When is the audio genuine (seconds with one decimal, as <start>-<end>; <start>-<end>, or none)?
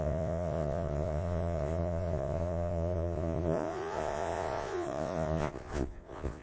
none